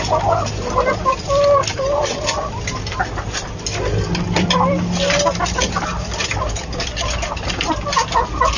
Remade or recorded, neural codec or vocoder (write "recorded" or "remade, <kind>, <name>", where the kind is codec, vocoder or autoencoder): recorded